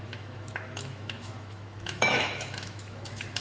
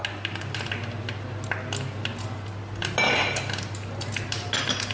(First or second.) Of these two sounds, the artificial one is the first